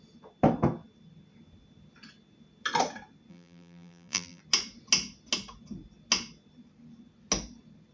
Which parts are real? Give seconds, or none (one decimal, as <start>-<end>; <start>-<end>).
0.0-3.3; 4.4-7.9